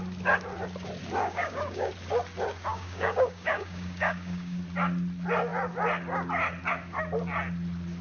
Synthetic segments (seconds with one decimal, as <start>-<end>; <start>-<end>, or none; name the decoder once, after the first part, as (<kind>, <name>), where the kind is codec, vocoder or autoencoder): 1.2-1.9 (codec, DAC); 2.7-4.6